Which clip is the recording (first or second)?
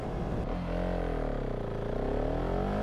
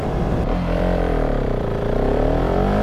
first